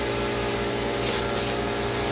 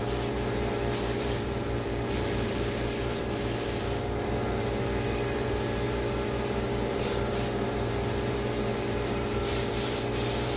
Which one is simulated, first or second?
second